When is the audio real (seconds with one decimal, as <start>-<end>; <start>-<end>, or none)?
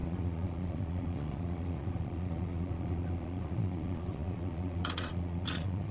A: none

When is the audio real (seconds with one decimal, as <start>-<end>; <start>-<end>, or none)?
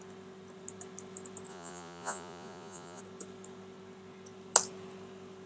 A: 0.0-1.5; 3.0-5.5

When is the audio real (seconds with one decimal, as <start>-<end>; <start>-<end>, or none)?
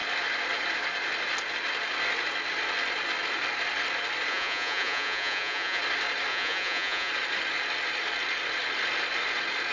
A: 0.0-4.3; 5.8-6.3; 7.1-9.7